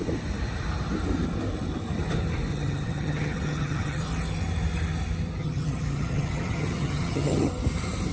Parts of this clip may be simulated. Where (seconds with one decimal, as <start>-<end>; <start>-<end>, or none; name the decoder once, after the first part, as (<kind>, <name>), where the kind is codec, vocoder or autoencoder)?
2.5-4.0 (vocoder, HiFi-GAN); 5.4-7.5